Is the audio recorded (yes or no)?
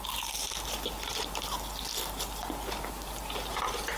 no